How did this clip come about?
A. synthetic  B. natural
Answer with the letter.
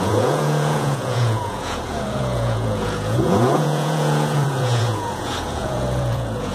A